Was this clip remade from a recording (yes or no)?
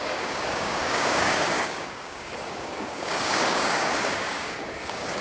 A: yes